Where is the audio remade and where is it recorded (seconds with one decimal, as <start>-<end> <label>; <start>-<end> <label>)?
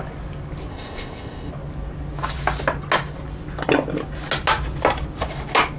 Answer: 0.0-0.7 recorded; 0.7-1.5 remade; 1.5-5.8 recorded